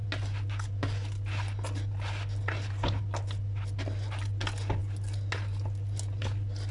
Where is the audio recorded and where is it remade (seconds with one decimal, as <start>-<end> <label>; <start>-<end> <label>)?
0.0-6.7 recorded